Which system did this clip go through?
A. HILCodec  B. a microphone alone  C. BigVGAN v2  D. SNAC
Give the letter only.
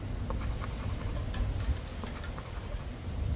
B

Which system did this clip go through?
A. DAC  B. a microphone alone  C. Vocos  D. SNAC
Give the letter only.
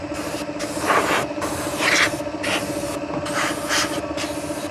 B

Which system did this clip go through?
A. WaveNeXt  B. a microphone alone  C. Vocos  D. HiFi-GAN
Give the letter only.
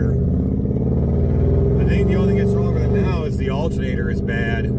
B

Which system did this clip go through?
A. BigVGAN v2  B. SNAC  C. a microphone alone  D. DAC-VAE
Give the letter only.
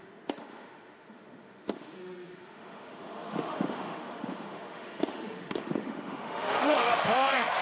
D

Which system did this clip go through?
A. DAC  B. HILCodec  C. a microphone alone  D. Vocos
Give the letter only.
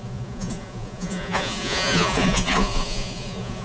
D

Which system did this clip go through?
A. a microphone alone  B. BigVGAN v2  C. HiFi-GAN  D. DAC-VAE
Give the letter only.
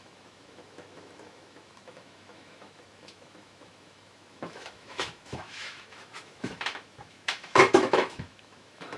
D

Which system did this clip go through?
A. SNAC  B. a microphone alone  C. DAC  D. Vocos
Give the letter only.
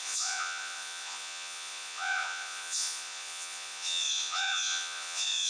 D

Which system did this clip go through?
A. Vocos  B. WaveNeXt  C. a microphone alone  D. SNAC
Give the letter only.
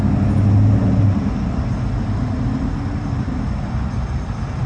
C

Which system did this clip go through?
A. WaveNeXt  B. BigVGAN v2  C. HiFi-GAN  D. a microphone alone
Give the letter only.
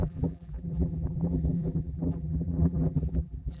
B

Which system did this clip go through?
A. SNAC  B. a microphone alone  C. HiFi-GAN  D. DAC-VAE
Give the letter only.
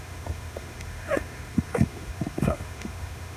D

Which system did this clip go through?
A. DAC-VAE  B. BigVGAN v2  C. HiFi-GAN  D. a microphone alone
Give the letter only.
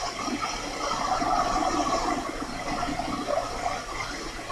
D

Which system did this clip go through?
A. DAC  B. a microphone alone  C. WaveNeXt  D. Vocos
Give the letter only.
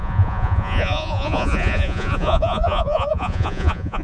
D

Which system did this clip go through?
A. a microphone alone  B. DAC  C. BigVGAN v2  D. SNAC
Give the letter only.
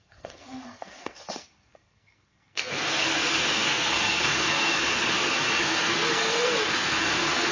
D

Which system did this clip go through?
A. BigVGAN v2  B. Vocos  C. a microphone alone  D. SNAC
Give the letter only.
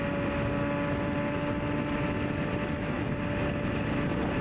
C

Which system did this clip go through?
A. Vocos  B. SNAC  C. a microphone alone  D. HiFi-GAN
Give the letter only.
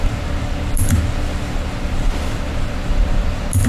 C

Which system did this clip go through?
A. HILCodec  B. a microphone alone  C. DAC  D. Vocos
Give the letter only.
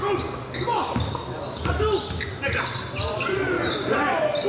B